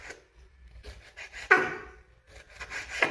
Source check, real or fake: real